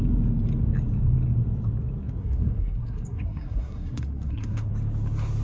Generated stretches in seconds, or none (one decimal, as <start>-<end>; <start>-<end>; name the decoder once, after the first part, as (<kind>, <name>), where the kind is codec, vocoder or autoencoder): 2.2-4.7 (codec, SNAC)